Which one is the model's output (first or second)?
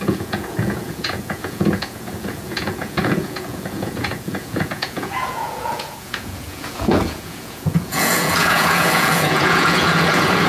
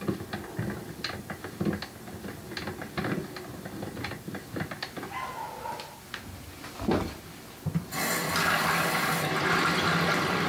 first